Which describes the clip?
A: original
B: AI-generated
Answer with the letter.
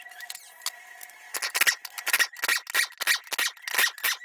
A